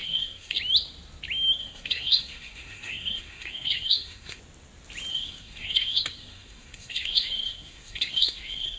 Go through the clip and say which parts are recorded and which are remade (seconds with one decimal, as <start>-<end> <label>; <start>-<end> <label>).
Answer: 0.0-0.6 remade; 0.6-1.6 recorded; 1.6-4.4 remade; 4.4-5.1 recorded; 5.1-8.8 remade

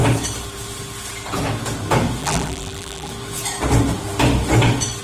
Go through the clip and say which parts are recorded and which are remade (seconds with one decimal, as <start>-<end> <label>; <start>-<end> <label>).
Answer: 0.0-2.2 recorded; 2.2-3.1 remade; 3.1-5.0 recorded